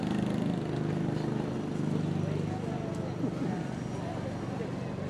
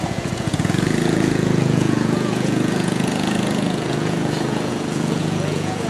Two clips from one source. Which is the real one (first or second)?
first